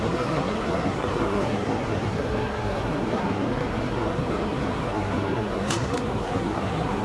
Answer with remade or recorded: remade